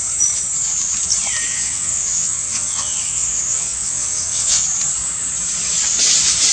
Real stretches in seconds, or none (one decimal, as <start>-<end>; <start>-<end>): 0.0-1.5; 4.6-6.5